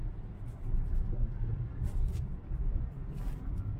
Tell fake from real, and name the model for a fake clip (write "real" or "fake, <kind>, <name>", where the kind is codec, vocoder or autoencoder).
real